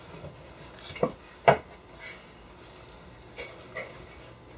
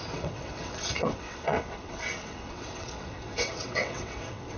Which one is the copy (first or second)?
second